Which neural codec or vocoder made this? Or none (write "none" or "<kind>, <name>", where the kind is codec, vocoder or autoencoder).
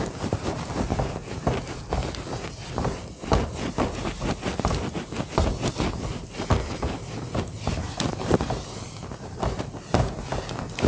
none